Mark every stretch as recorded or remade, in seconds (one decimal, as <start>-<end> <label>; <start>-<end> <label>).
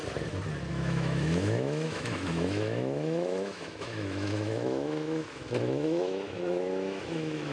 0.0-0.7 recorded; 0.7-7.5 remade